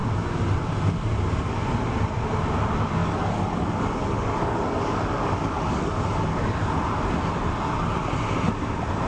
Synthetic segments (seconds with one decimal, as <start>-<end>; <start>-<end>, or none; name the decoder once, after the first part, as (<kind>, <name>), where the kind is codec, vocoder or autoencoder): 3.0-5.8 (codec, DAC)